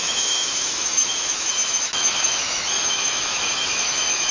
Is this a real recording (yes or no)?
no